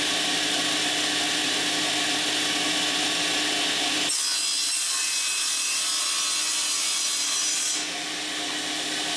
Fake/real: real